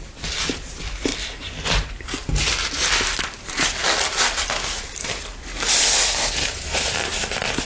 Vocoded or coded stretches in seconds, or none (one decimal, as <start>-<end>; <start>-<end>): none

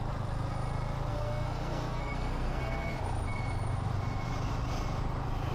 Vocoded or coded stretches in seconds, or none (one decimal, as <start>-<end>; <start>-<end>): 1.1-2.9

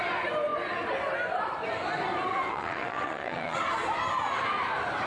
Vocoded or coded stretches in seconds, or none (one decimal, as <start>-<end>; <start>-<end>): 2.3-3.6

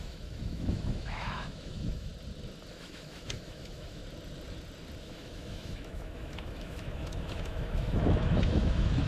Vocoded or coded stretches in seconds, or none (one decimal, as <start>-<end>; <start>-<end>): 0.0-2.1; 2.7-4.0; 5.0-9.1

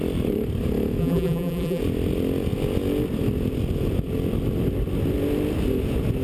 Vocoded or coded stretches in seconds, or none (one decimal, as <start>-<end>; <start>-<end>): 1.0-1.8